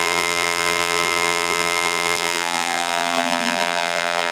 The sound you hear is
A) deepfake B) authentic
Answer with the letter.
A